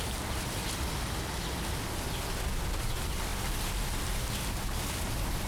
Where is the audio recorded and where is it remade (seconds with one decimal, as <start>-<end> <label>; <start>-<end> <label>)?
0.0-5.5 recorded